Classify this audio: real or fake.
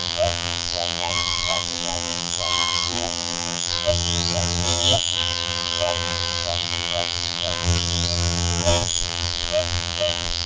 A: fake